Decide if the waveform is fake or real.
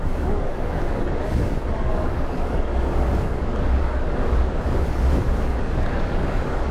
fake